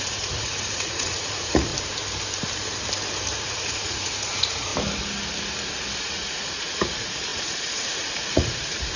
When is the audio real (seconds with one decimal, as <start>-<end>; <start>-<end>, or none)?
1.7-3.4; 4.7-6.0

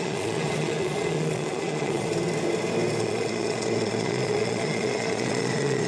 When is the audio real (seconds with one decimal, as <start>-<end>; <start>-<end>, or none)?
2.1-3.0

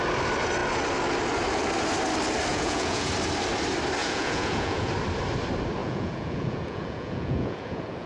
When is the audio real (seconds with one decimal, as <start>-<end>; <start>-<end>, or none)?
0.0-2.5; 3.1-4.0; 4.9-5.8

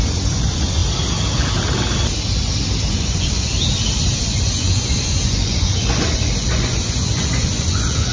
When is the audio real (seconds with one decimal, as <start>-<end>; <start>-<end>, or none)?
0.8-2.9; 3.5-4.2

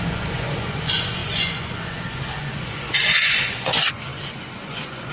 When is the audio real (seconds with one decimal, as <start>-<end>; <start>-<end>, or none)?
none

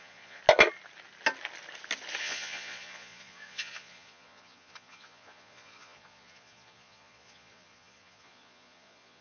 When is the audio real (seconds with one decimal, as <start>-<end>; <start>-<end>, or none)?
0.4-2.2

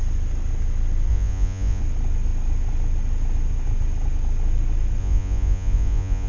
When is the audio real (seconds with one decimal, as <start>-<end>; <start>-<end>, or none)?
0.0-1.1; 1.8-5.0

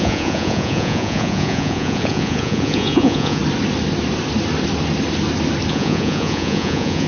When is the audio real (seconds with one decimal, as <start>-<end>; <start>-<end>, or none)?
3.4-5.7